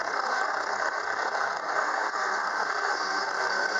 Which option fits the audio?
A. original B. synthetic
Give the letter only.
B